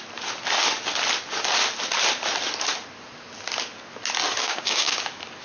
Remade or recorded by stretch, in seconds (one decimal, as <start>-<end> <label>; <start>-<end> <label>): 0.0-4.4 recorded; 4.4-5.0 remade; 5.0-5.4 recorded

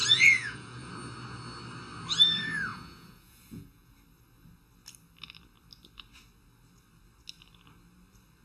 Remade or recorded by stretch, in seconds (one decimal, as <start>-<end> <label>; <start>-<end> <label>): 0.0-0.9 remade; 0.9-2.7 recorded; 2.7-3.9 remade; 3.9-8.4 recorded

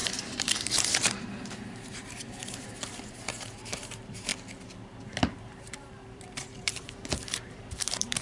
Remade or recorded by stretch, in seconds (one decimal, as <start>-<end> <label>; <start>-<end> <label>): 0.0-4.3 remade; 4.3-5.4 recorded; 5.4-8.2 remade

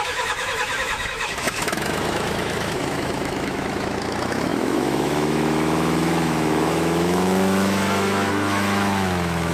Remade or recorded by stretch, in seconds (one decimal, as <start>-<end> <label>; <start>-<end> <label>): 0.0-9.5 remade

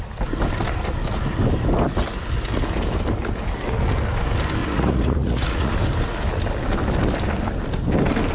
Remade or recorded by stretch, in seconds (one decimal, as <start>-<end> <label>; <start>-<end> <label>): 0.0-4.6 recorded; 4.6-5.7 remade; 5.7-8.3 recorded

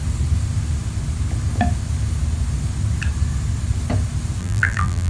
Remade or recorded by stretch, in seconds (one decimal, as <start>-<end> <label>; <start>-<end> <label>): 0.0-4.4 recorded; 4.4-5.1 remade

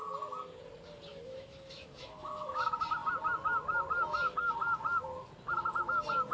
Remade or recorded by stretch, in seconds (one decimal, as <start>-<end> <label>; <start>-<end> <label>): 0.0-1.1 recorded; 1.1-2.6 remade; 2.6-6.3 recorded